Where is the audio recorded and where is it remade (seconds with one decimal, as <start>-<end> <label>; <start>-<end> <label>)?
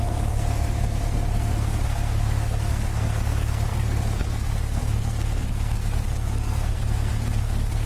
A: 0.0-7.9 remade